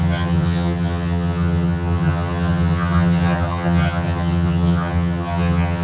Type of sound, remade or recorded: remade